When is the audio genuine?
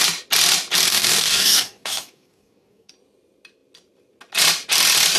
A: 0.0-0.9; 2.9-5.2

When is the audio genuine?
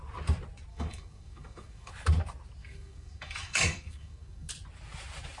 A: 0.0-0.7; 1.9-2.6; 4.5-5.4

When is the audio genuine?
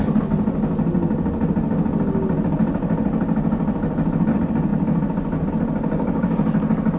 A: 0.0-5.9; 6.4-7.0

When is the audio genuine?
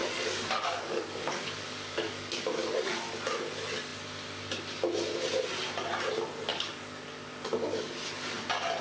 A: 2.9-6.5; 7.9-8.8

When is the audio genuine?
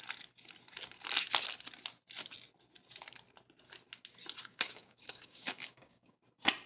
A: 0.0-4.4; 6.2-6.7